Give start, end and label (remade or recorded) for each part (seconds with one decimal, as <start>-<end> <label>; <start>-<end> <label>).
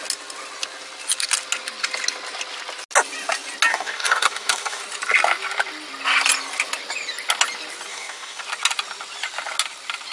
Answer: 0.0-3.7 recorded; 3.7-4.8 remade; 4.8-7.9 recorded; 7.9-8.4 remade; 8.4-10.1 recorded